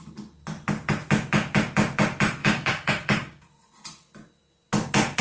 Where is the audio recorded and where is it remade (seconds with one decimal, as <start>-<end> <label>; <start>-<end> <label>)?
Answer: 0.0-2.4 recorded; 2.4-3.5 remade; 3.5-5.2 recorded